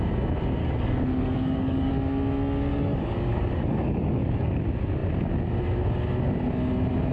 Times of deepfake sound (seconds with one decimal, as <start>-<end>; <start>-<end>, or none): 0.6-1.9; 2.7-4.6